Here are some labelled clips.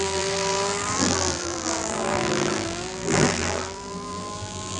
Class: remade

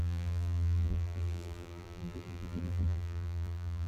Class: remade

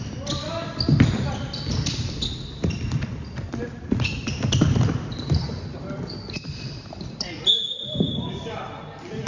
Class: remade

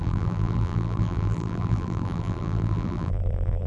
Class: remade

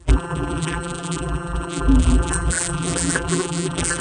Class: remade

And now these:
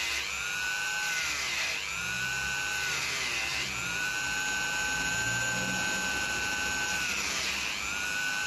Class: recorded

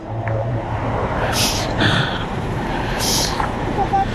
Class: remade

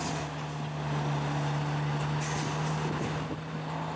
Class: recorded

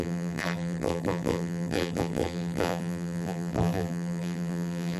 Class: remade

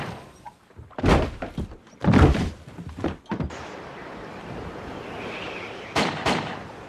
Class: remade